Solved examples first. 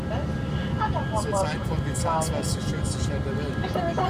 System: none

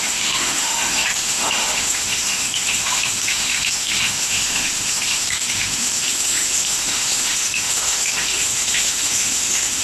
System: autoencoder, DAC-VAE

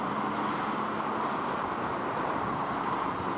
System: none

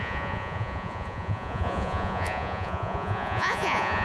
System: vocoder, Vocos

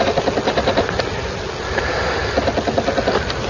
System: none